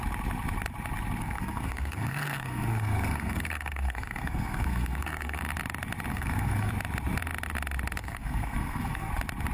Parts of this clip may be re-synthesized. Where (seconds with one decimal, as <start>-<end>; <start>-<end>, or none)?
1.2-5.4; 6.1-6.7; 8.0-9.1